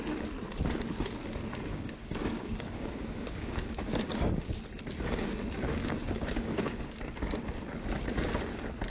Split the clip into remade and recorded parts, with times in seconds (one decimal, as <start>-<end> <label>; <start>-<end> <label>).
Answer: 0.0-1.7 recorded; 1.7-4.3 remade; 4.3-5.8 recorded; 5.8-6.9 remade; 6.9-8.9 recorded